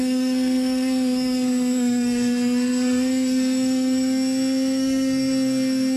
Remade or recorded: remade